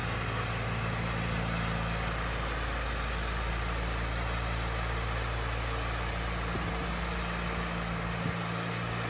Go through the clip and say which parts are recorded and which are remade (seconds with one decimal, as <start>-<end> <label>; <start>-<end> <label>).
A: 0.0-9.1 recorded